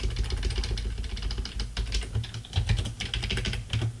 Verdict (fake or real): real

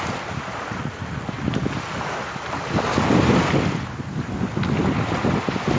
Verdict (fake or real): real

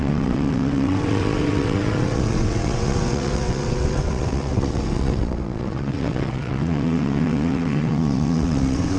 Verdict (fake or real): fake